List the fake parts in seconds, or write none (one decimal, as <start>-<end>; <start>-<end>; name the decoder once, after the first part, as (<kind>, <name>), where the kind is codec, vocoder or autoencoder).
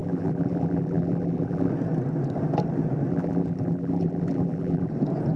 0.0-1.7 (vocoder, BigVGAN v2); 3.1-4.9